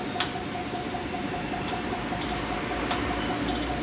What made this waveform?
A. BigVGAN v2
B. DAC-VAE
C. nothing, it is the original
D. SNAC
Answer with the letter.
C